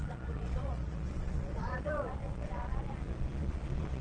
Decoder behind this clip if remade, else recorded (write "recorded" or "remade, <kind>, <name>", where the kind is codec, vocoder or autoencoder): remade, vocoder, Vocos